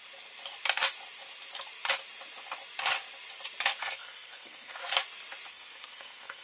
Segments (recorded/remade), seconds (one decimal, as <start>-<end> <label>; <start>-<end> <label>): 0.0-3.8 recorded; 3.8-4.8 remade; 4.8-5.5 recorded; 5.5-6.4 remade